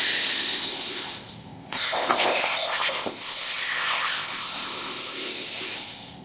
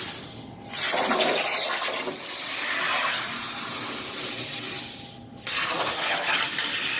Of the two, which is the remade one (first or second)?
first